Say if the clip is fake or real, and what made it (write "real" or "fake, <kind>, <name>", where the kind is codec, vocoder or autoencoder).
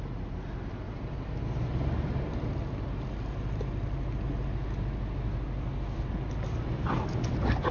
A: real